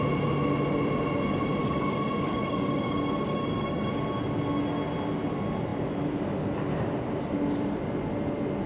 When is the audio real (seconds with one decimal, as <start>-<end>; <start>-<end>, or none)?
0.0-1.6; 3.9-8.7